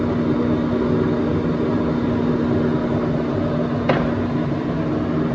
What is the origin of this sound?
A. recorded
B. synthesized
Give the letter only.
A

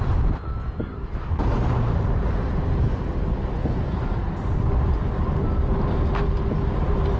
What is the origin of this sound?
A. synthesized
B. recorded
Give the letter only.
B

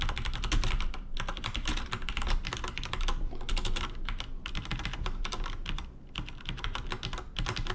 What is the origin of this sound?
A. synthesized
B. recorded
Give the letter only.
B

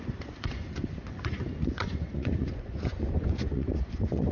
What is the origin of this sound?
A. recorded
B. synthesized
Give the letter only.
B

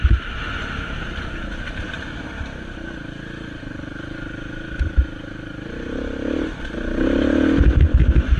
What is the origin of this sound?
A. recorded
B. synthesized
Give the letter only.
A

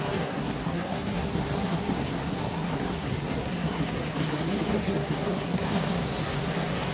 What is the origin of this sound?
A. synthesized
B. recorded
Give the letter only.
A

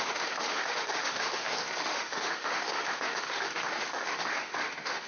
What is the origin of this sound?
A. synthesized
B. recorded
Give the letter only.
A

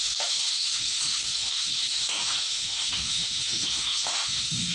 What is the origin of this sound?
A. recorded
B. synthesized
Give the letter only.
B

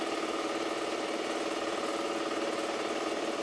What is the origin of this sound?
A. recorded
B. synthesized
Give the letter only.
A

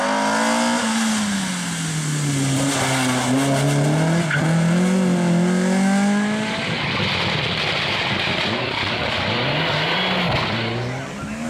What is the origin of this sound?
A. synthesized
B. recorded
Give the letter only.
B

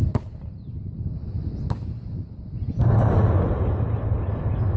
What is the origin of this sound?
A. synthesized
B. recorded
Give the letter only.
B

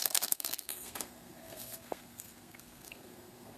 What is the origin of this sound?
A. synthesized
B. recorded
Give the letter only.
A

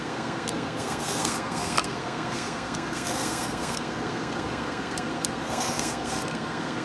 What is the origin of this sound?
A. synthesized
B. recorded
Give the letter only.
A